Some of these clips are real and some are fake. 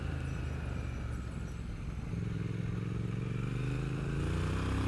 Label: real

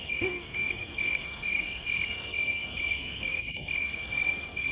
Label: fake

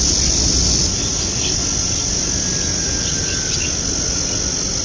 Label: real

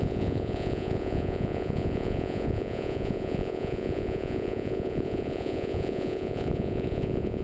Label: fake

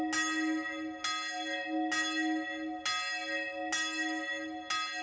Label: real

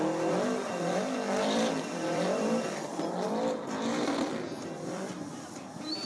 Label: fake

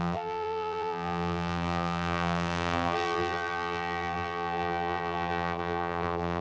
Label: fake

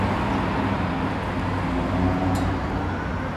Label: real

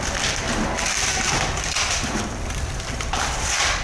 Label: fake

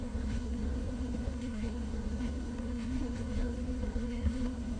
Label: fake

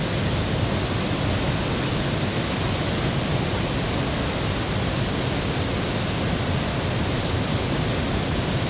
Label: real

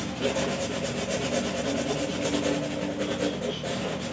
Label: real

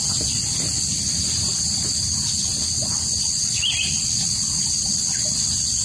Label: real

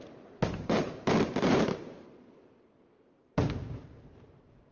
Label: fake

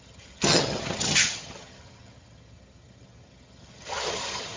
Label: fake